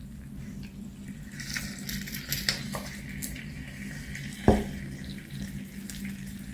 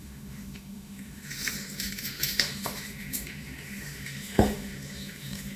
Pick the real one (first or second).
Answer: first